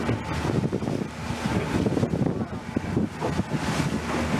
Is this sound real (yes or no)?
yes